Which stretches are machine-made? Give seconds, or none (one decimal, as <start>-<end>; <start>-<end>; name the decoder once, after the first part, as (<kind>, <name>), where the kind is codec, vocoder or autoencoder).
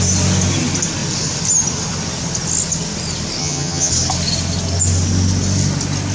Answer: 3.4-3.9 (vocoder, HiFi-GAN)